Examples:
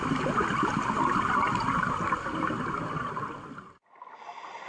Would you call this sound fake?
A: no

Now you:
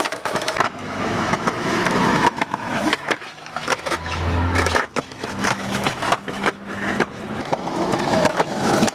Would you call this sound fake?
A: yes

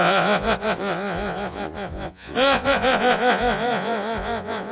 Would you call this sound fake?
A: yes